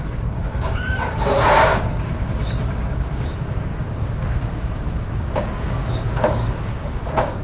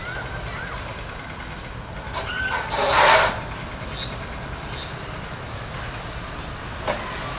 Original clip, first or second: second